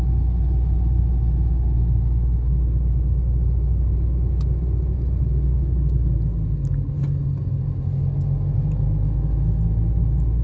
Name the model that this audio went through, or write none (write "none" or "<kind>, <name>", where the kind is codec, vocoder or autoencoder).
none